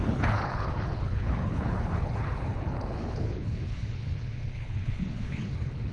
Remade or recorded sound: remade